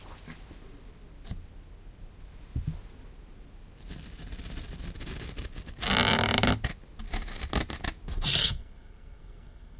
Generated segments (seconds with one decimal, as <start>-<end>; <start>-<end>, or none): 8.4-9.8